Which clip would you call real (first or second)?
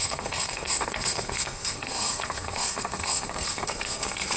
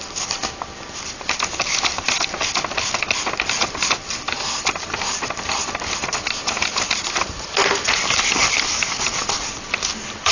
second